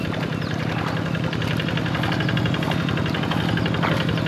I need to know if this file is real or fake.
real